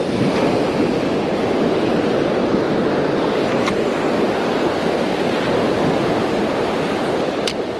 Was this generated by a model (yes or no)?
no